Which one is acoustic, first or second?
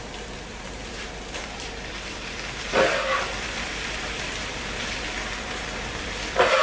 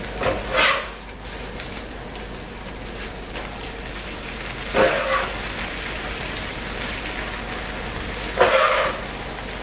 second